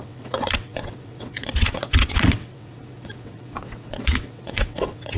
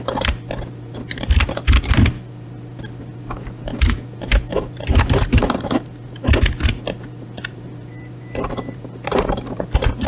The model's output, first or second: first